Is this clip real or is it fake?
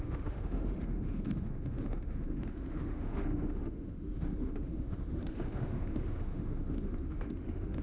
fake